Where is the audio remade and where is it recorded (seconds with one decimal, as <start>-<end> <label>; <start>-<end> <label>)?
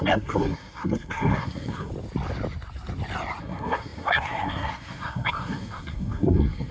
0.0-1.9 remade; 1.9-3.4 recorded; 3.4-6.7 remade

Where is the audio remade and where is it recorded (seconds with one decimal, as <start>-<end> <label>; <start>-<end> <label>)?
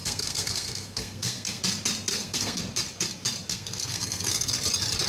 0.0-1.6 remade; 1.6-2.1 recorded; 2.1-2.6 remade; 2.6-3.5 recorded; 3.5-4.5 remade; 4.5-5.1 recorded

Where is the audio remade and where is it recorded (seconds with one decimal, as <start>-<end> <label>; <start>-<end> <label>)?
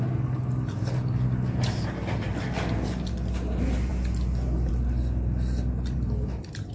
0.0-6.7 recorded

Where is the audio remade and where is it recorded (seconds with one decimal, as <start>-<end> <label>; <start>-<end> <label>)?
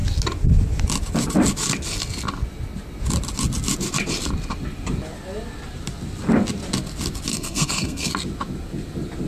0.0-7.3 recorded; 7.3-8.1 remade; 8.1-9.3 recorded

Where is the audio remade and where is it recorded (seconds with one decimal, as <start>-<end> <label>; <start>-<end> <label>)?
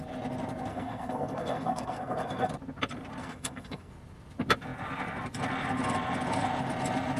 0.0-0.7 recorded; 0.7-2.5 remade; 2.5-3.2 recorded; 3.2-3.9 remade; 3.9-7.2 recorded